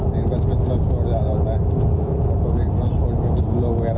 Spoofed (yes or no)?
no